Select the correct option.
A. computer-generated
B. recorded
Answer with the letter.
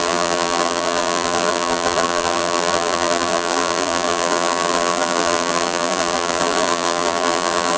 A